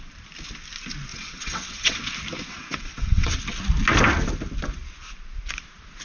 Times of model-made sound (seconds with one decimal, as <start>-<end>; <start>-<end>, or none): 1.1-2.0; 2.5-3.4